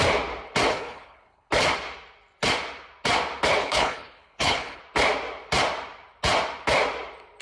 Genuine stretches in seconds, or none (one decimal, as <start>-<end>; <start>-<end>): 0.0-0.7; 1.5-3.6; 4.8-7.4